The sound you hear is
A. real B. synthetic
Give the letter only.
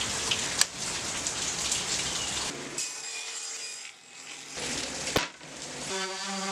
B